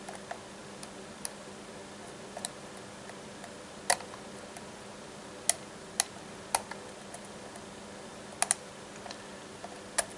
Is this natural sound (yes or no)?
yes